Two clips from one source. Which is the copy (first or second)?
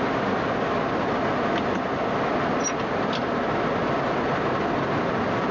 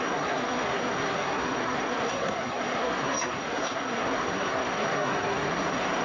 second